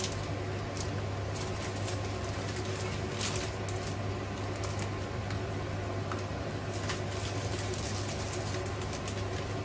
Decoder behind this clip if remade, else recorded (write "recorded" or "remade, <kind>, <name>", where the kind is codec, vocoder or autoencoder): recorded